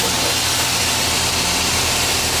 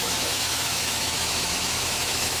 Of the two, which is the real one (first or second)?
first